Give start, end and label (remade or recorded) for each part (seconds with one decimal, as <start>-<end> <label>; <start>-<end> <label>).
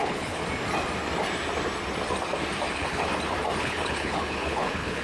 0.0-0.4 remade; 0.4-2.7 recorded; 2.7-3.1 remade; 3.1-3.6 recorded; 3.6-5.0 remade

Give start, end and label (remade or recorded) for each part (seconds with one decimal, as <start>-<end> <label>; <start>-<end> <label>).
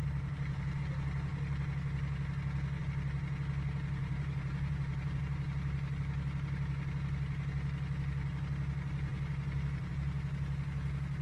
0.0-0.8 remade; 0.8-4.0 recorded; 4.0-5.2 remade; 5.2-9.1 recorded; 9.1-9.9 remade; 9.9-11.2 recorded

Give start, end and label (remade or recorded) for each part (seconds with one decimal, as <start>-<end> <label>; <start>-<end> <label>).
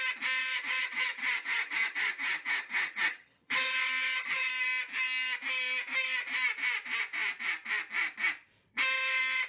0.0-0.4 recorded; 0.4-4.5 remade; 4.5-9.5 recorded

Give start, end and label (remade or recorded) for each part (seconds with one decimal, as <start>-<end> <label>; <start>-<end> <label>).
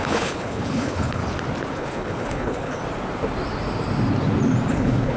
0.0-1.2 remade; 1.2-1.7 recorded; 1.7-2.8 remade; 2.8-4.7 recorded; 4.7-5.2 remade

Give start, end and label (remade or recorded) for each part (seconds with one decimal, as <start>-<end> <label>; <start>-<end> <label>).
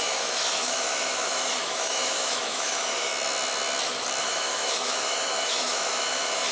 0.0-3.1 remade; 3.1-4.2 recorded; 4.2-6.5 remade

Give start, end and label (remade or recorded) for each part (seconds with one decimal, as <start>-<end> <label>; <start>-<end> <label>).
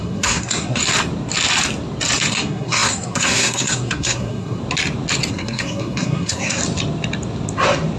0.0-0.8 remade; 0.8-2.3 recorded; 2.3-4.6 remade; 4.6-5.3 recorded; 5.3-6.6 remade; 6.6-8.0 recorded